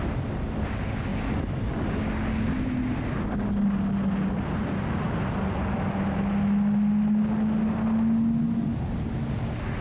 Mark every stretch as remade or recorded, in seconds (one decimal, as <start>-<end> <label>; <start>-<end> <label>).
0.0-9.8 recorded